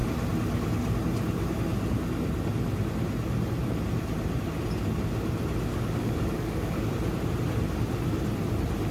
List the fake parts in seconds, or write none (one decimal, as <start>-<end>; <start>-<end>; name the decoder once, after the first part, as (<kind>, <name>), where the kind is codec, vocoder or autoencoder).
5.7-6.9 (codec, DAC)